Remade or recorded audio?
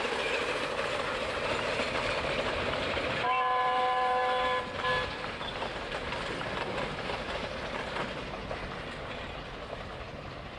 recorded